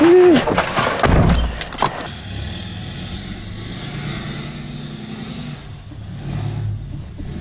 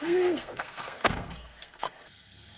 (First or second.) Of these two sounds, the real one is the first